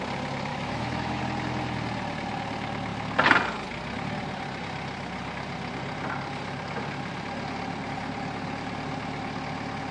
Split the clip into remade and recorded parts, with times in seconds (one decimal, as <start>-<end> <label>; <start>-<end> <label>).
0.0-0.5 recorded; 0.5-1.2 remade; 1.2-9.9 recorded